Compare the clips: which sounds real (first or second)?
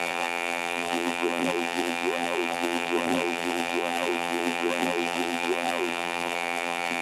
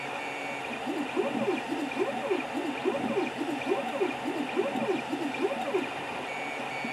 second